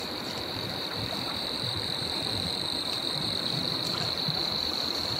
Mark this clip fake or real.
fake